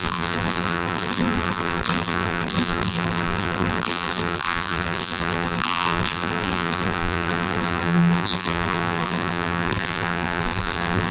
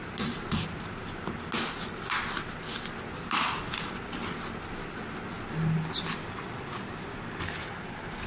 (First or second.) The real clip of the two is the second